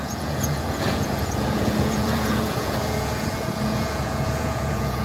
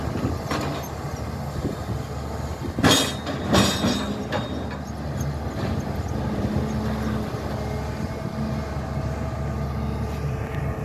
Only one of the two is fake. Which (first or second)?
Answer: first